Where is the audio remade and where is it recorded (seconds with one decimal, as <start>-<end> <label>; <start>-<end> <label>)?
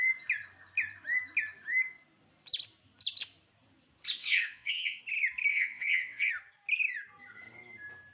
0.0-4.2 recorded; 4.2-5.0 remade; 5.0-5.5 recorded; 5.5-6.3 remade; 6.3-8.1 recorded